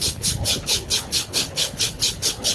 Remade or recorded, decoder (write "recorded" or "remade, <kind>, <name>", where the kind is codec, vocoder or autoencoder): remade, codec, HILCodec